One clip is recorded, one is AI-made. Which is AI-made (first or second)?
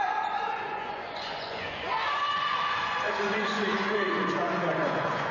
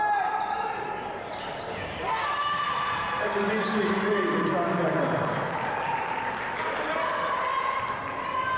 first